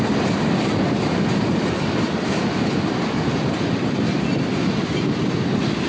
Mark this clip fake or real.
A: real